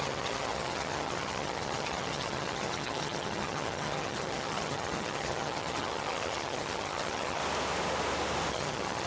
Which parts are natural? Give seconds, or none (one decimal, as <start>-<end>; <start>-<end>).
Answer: 7.4-8.5